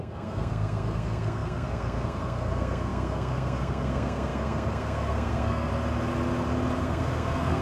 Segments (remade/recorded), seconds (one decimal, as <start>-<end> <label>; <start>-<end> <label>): 0.0-5.7 remade; 5.7-6.8 recorded; 6.8-7.6 remade